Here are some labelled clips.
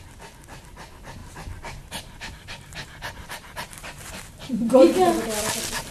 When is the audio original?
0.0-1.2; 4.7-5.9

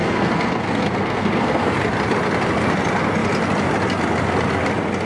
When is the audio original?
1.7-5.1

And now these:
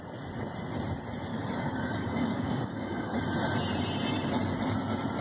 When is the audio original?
0.0-1.3; 3.2-5.2

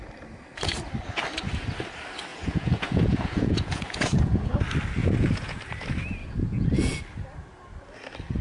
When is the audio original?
0.0-2.3; 4.5-5.0; 5.6-6.2; 7.0-8.4